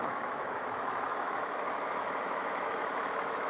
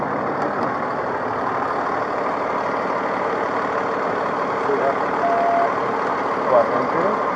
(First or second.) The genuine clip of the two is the second